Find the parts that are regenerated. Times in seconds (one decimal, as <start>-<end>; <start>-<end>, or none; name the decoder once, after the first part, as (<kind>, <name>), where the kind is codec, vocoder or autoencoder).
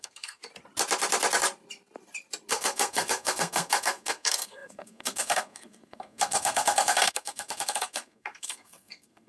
0.0-0.4 (codec, SNAC); 2.5-9.3